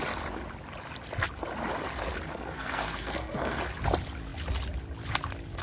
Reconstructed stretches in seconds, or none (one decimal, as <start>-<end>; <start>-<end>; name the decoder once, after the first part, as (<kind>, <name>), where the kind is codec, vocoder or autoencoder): 2.3-3.6 (codec, SNAC)